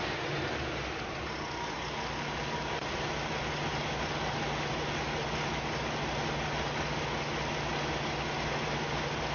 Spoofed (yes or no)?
no